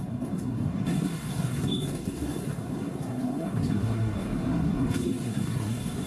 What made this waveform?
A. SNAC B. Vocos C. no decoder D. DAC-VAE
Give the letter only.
A